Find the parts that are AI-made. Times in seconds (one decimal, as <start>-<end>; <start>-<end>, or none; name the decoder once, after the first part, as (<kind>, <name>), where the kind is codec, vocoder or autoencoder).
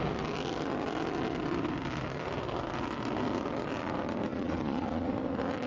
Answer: 4.3-5.1 (vocoder, Vocos)